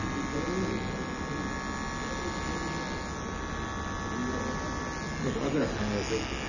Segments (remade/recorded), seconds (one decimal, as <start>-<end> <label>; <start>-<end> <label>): 0.0-6.5 recorded